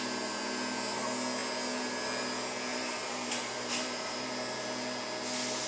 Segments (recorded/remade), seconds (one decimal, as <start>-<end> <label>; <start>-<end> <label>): 0.0-2.7 recorded; 2.7-4.3 remade; 4.3-5.7 recorded